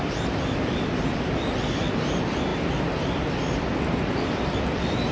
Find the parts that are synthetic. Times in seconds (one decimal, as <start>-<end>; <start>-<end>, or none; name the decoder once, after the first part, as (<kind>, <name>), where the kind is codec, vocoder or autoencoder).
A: none